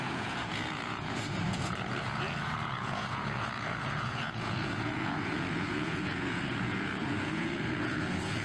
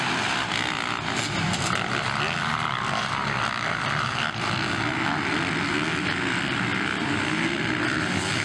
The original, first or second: second